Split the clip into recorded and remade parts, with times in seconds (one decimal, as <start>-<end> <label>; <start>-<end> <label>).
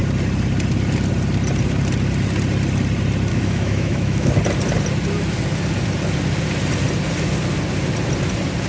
0.0-3.3 recorded; 3.3-4.3 remade; 4.3-8.7 recorded